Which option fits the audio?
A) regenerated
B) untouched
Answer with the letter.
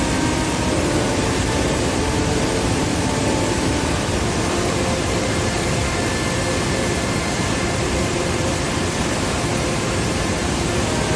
A